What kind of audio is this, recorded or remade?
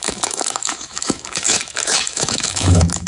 remade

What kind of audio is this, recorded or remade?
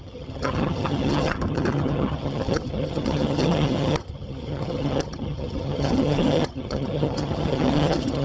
remade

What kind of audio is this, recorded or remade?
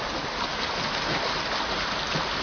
recorded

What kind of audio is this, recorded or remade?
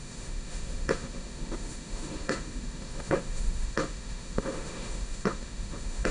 remade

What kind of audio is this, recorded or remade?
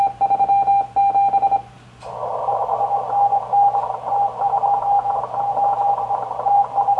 recorded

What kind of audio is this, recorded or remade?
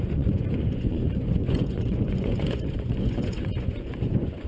remade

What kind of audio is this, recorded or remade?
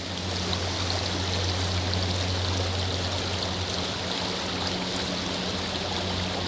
recorded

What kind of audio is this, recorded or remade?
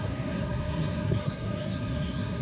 remade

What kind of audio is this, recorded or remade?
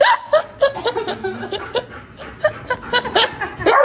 recorded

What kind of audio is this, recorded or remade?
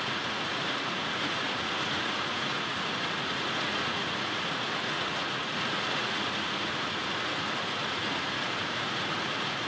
remade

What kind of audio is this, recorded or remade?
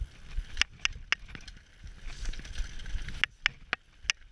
recorded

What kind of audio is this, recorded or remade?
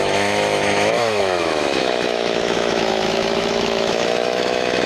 remade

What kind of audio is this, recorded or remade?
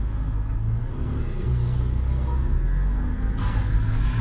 remade